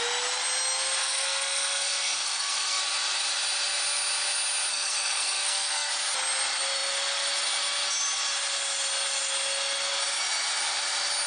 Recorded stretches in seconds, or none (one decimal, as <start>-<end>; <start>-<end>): 0.0-1.0; 2.8-4.7; 5.9-11.3